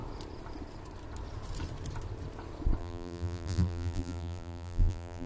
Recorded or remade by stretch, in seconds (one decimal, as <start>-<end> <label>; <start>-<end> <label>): 0.0-2.8 recorded; 2.8-5.3 remade